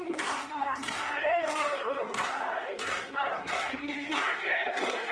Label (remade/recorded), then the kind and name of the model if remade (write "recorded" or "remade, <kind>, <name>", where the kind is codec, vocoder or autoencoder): remade, codec, SNAC